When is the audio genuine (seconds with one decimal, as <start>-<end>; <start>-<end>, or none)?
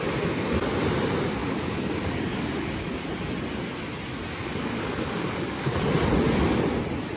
0.0-1.4; 3.1-4.4; 5.8-7.2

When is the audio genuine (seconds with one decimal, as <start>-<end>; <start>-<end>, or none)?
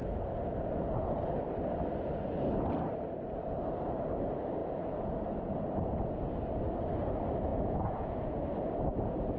0.0-4.6; 5.2-7.5; 8.4-9.4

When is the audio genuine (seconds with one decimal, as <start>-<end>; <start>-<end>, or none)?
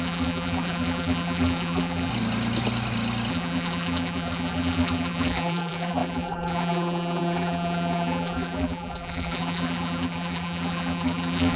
2.1-3.3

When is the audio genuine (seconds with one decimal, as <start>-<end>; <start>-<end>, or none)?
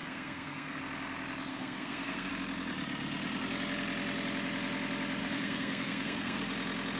0.8-1.5; 2.3-5.2; 6.4-7.0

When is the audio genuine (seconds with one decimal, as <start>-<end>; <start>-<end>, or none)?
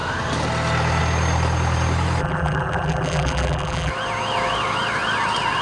0.0-2.2; 3.9-5.6